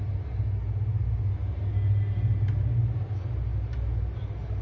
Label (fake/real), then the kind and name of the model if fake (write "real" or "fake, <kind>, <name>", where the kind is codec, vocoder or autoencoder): real